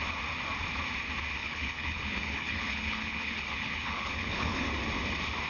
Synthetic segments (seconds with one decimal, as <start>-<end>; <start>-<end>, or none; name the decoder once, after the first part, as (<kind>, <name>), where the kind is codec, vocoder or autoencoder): 1.4-4.7 (codec, HILCodec)